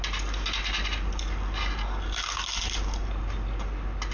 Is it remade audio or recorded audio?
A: recorded